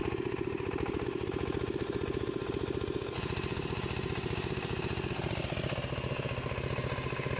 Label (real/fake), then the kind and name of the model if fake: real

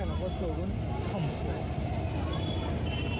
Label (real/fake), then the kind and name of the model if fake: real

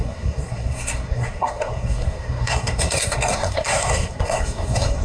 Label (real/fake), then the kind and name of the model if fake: fake, codec, SNAC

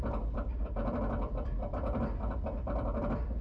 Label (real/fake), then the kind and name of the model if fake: fake, vocoder, BigVGAN v2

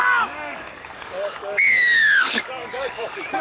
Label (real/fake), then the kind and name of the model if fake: fake, codec, DAC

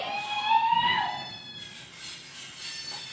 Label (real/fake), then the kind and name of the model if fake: real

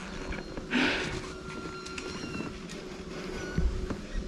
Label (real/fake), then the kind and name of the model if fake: real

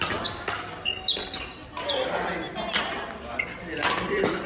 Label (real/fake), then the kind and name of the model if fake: real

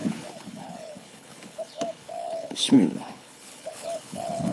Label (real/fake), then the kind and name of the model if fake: fake, codec, HILCodec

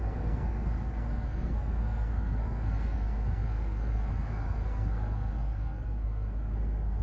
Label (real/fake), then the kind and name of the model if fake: fake, codec, SNAC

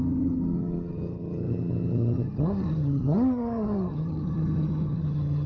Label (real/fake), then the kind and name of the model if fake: fake, vocoder, HiFi-GAN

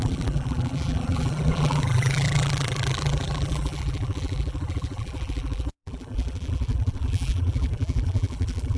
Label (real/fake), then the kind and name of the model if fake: fake, vocoder, BigVGAN v2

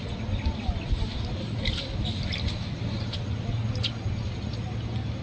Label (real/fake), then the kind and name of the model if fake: real